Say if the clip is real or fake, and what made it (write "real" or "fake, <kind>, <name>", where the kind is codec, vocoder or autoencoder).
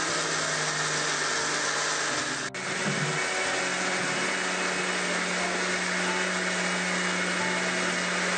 real